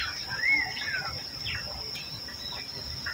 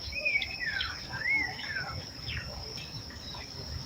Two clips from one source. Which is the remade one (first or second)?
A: second